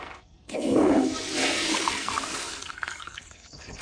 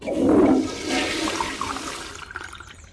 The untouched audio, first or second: second